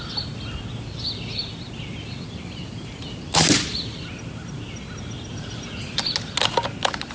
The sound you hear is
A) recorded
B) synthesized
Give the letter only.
A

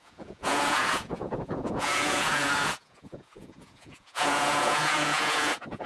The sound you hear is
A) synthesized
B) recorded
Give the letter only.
A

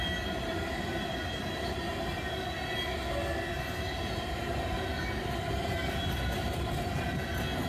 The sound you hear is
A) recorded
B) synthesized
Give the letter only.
A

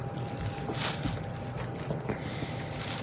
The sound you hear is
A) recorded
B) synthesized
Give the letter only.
A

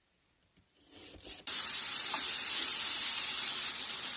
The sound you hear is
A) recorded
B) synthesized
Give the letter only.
A